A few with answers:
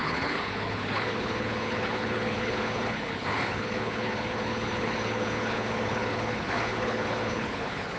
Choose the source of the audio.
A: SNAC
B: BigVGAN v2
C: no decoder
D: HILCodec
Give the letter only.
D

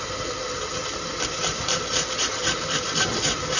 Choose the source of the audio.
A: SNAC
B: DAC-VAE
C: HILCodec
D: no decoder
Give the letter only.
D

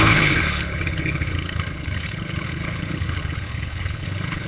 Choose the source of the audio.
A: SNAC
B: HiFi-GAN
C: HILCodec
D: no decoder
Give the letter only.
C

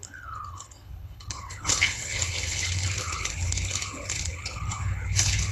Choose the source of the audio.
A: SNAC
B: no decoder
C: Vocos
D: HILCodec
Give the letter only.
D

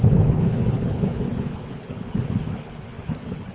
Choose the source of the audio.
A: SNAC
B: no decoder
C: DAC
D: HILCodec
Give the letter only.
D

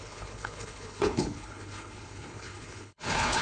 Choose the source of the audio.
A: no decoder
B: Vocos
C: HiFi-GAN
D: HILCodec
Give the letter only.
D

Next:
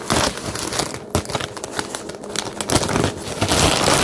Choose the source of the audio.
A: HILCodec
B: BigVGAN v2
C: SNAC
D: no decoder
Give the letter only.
D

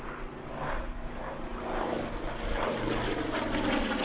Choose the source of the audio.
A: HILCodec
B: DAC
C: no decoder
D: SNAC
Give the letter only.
C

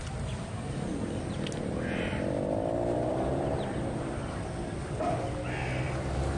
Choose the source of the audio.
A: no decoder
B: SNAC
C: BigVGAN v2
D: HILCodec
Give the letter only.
A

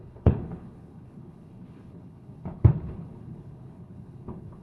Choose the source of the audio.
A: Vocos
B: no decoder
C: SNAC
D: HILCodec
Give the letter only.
D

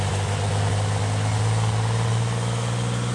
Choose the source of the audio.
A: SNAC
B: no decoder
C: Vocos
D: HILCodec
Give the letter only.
B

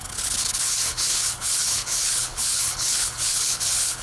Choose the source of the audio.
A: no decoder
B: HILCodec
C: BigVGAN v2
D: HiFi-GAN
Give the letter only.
B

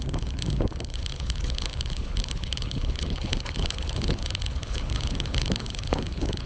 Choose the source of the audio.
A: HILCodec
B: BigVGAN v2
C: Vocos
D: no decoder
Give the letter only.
A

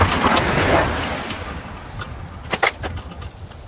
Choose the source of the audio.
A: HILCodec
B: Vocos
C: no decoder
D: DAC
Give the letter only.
C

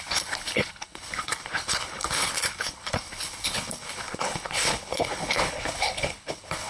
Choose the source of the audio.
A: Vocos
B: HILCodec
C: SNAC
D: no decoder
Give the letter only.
B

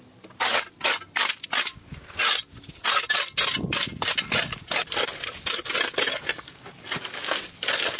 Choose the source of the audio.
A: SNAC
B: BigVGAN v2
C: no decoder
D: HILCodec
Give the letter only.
C